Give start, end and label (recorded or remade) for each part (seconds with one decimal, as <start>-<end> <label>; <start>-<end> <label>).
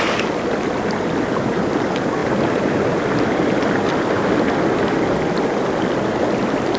0.0-6.8 recorded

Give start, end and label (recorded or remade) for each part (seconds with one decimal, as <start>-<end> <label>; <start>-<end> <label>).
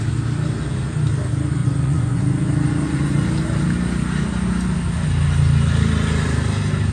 0.0-1.6 recorded; 1.6-2.2 remade; 2.2-6.9 recorded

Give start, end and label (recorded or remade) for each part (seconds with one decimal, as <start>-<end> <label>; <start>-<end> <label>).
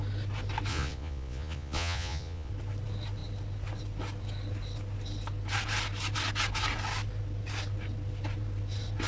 0.0-0.7 recorded; 0.7-2.5 remade; 2.5-9.1 recorded